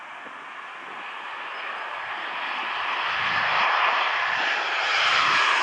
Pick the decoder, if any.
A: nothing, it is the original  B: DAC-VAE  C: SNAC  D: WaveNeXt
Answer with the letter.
A